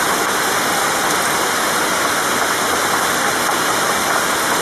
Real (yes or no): yes